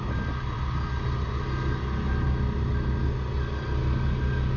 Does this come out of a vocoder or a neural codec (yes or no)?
no